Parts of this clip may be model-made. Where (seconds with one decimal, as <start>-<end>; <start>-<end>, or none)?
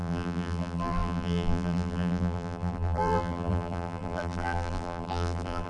0.0-5.7